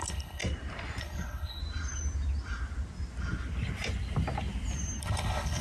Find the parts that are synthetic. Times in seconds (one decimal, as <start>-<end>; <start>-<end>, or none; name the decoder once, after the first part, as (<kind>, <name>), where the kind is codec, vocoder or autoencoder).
0.0-0.4 (codec, HILCodec); 1.0-1.6; 5.0-5.6